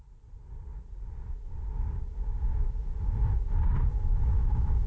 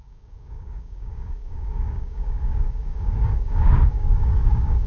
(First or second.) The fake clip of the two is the second